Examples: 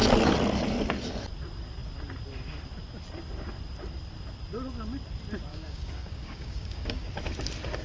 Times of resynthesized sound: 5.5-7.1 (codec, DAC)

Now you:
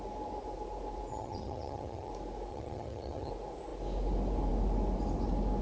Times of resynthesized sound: 1.1-2.1 (vocoder, HiFi-GAN); 2.5-3.3

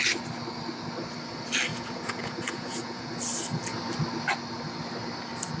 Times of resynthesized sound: 1.7-3.1 (vocoder, Vocos)

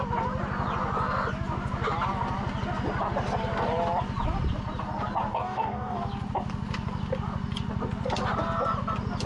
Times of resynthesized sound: 5.3-6.0 (codec, DAC)

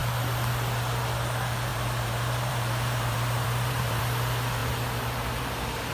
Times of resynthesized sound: 1.7-4.0 (vocoder, BigVGAN v2)

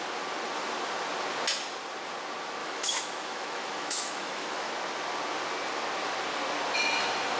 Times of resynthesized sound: 2.6-4.7 (autoencoder, DAC-VAE)

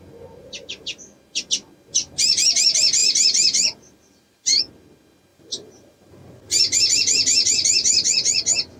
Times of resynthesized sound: 0.4-1.0 (vocoder, BigVGAN v2); 3.0-4.6; 5.3-6.9

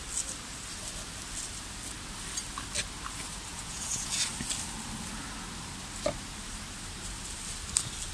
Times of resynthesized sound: 3.5-4.1 (vocoder, Vocos)